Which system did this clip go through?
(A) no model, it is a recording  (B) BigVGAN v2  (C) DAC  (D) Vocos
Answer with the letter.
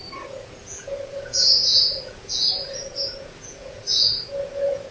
D